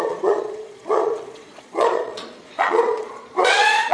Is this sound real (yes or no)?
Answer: no